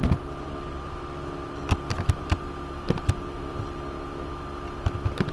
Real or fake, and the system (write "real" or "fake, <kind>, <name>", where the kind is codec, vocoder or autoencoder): real